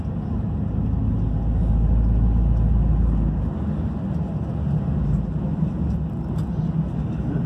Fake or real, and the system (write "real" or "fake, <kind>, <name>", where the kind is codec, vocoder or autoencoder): real